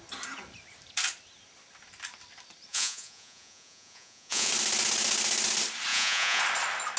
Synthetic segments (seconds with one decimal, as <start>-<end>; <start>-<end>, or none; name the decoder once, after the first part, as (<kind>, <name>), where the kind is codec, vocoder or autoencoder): 2.7-4.5 (vocoder, Vocos); 5.9-6.4